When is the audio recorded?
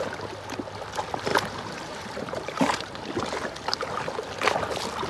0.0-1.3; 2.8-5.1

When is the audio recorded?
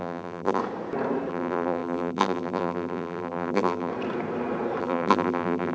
0.6-1.3; 3.9-4.8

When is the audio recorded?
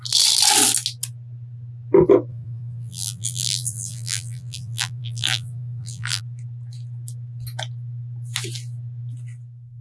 0.0-2.3; 6.2-9.8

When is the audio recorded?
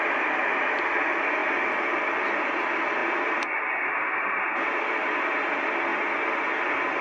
1.4-1.9; 5.9-7.0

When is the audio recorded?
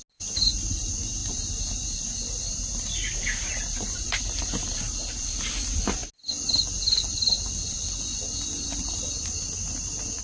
0.0-1.2; 4.8-10.2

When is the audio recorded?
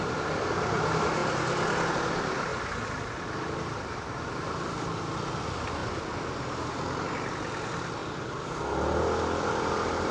0.0-10.1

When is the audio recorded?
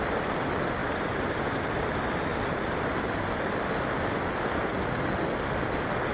0.0-0.8; 1.7-6.1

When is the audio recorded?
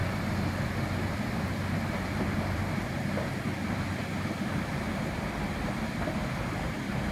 0.0-1.2; 2.6-6.3